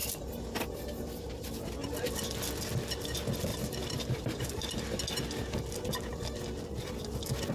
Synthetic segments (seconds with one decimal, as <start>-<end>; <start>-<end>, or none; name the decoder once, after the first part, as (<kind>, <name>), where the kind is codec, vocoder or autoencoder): 0.0-1.9 (vocoder, BigVGAN v2); 3.5-5.0